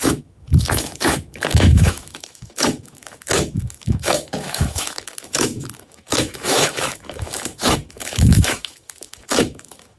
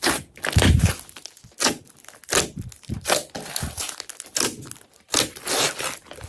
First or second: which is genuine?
second